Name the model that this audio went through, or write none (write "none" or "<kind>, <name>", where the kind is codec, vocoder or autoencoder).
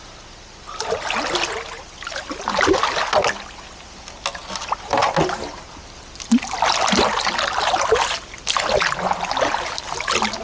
none